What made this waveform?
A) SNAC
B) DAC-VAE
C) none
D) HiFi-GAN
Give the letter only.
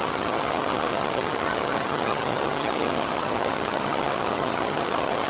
D